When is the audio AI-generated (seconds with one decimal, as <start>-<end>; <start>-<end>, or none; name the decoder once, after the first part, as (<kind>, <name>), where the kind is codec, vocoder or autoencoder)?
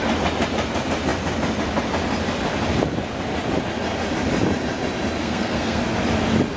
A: 5.2-5.8 (codec, SNAC)